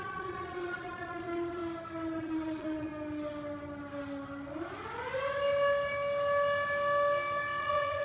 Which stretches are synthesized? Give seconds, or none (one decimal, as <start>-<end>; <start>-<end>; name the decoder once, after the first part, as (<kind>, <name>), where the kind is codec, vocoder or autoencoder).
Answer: 0.0-1.6 (vocoder, Vocos); 2.2-2.9; 7.6-8.0